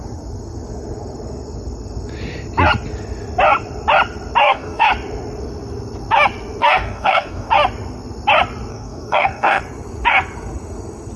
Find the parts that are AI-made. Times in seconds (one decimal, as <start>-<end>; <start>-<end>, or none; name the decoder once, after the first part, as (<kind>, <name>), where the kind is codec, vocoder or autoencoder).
4.4-4.9 (codec, DAC); 6.6-7.5; 8.7-9.6